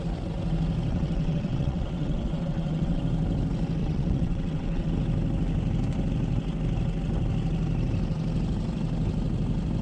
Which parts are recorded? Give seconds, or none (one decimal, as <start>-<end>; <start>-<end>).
0.0-0.9; 3.0-3.8; 4.9-9.8